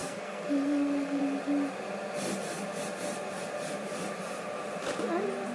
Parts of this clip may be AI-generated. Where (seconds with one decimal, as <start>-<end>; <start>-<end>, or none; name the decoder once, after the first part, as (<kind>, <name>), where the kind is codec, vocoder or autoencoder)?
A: 0.0-1.2 (codec, SNAC)